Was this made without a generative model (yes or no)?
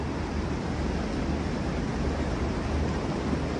yes